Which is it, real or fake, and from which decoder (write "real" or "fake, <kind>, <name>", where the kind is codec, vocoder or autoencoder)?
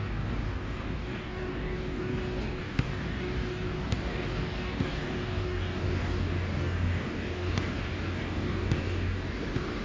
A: fake, codec, DAC